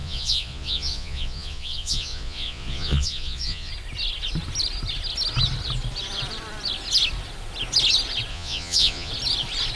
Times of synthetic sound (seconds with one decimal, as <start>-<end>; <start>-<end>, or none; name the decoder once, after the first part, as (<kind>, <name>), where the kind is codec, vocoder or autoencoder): 0.0-3.7 (vocoder, Vocos); 8.3-9.1